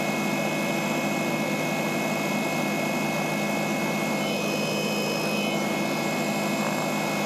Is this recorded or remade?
recorded